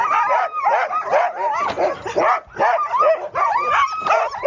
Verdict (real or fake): real